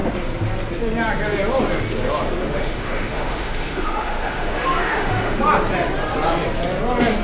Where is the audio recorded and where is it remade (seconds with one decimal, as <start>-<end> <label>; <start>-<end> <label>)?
0.0-2.4 recorded; 2.4-5.4 remade; 5.4-7.2 recorded